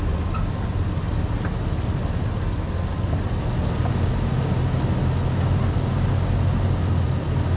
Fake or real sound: real